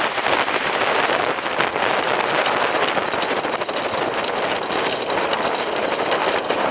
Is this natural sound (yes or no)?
yes